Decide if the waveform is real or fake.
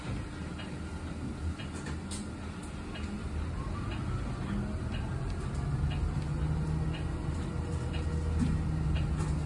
real